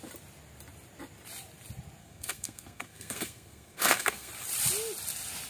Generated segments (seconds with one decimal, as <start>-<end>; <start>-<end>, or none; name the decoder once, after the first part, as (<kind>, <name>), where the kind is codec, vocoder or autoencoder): 2.0-4.3 (codec, SNAC)